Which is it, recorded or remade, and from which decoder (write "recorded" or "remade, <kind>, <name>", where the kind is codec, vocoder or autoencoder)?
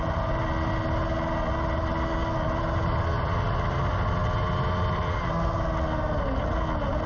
recorded